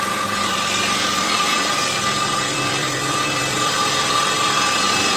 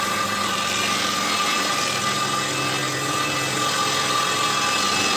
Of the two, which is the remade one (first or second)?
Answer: first